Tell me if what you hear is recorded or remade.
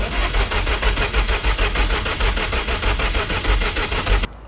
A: recorded